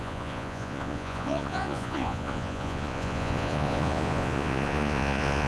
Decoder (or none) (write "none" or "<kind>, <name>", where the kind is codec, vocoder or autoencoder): vocoder, Vocos